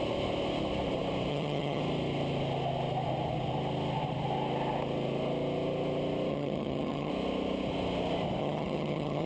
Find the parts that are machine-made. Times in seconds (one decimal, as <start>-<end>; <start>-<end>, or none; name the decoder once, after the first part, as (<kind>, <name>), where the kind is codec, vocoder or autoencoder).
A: 1.3-1.8 (vocoder, HiFi-GAN); 6.3-7.1; 8.4-9.3